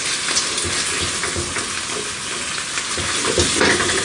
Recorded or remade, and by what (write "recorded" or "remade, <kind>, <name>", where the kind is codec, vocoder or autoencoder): recorded